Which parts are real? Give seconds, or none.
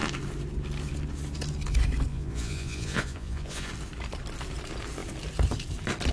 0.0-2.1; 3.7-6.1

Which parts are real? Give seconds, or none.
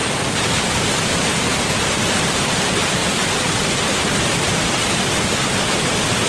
0.0-1.1; 3.0-5.1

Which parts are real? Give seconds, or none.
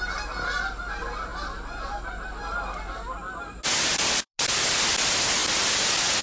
0.0-6.2